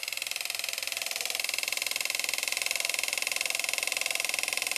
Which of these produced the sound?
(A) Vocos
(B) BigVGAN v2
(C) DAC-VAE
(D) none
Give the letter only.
B